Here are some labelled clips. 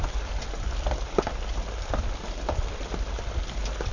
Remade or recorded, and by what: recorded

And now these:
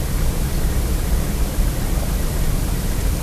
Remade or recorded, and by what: recorded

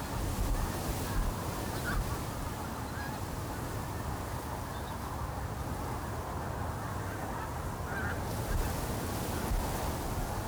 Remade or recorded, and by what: recorded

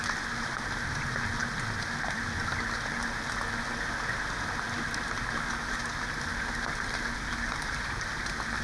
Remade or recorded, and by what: recorded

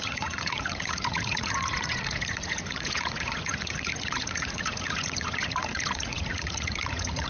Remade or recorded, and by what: remade, vocoder, Vocos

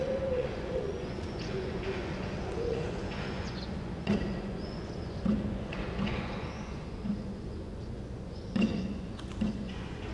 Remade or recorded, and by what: remade, vocoder, Vocos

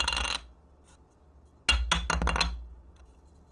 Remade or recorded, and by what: recorded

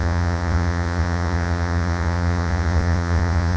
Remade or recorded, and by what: remade, vocoder, Vocos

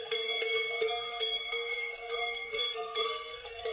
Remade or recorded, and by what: remade, codec, SNAC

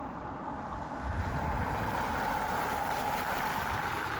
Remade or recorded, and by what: recorded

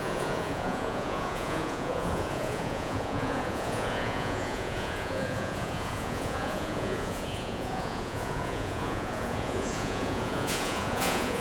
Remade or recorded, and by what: remade, vocoder, Vocos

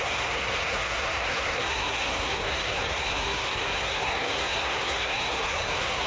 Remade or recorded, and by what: remade, codec, SNAC